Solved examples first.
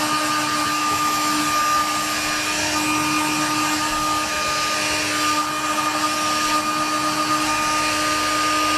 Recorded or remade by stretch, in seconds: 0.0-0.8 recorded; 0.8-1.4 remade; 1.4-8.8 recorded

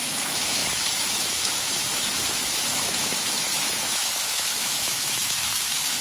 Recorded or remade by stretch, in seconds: 0.0-6.0 remade

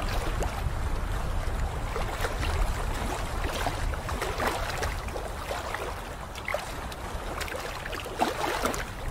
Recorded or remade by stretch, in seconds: 0.0-9.1 recorded

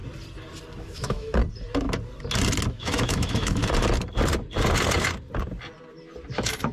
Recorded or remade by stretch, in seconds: 0.0-0.8 recorded; 0.8-1.4 remade; 1.4-2.7 recorded; 2.7-3.6 remade; 3.6-6.3 recorded; 6.3-6.7 remade

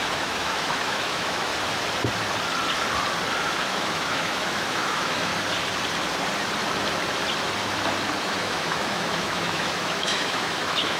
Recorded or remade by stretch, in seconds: 0.0-1.5 remade; 1.5-3.6 recorded; 3.6-5.3 remade; 5.3-8.2 recorded; 8.2-11.0 remade

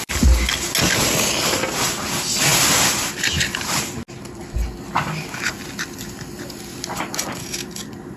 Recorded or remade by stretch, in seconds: 0.0-8.2 recorded

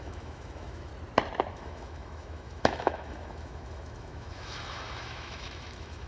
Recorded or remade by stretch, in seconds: 0.0-0.9 remade; 0.9-1.5 recorded; 1.5-6.1 remade